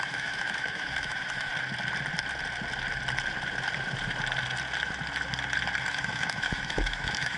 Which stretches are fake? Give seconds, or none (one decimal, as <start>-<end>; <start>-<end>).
0.0-1.5; 5.9-7.4